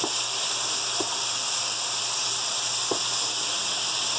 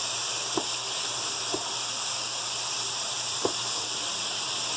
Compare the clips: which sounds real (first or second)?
first